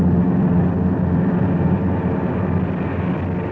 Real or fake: real